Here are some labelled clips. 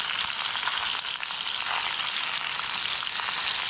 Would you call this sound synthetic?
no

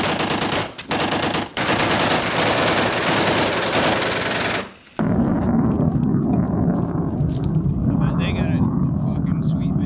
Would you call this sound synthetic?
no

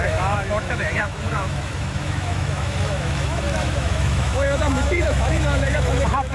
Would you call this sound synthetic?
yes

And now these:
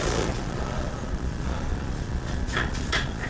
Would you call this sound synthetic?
yes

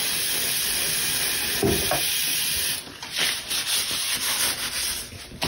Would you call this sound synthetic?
no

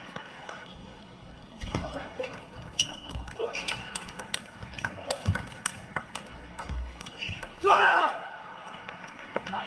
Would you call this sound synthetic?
yes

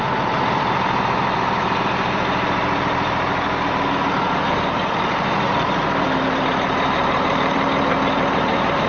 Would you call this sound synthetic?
yes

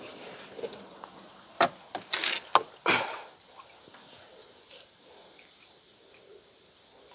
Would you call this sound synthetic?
no